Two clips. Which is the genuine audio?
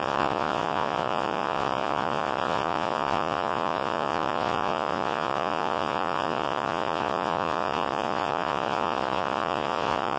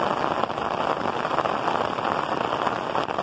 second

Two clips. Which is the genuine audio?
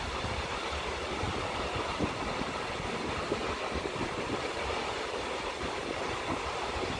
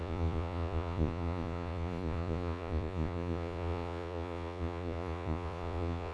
first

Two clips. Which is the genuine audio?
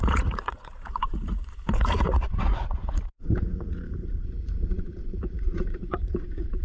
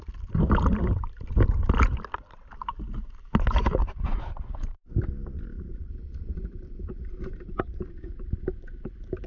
second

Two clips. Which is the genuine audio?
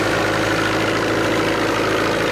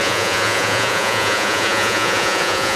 first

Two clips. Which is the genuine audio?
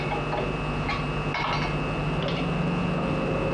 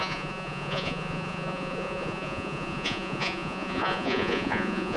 first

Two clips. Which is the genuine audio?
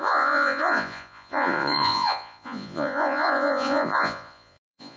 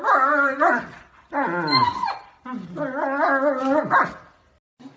second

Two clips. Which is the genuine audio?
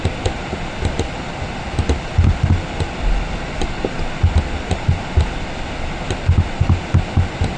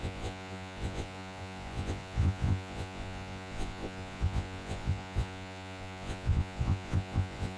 first